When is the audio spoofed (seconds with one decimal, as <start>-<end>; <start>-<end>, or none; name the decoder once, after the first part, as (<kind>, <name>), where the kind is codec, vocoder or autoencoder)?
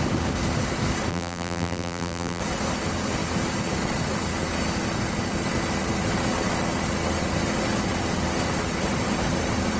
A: 1.1-2.4 (vocoder, BigVGAN v2)